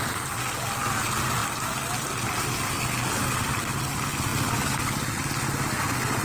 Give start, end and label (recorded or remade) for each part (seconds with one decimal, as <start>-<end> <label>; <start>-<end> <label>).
0.0-6.2 recorded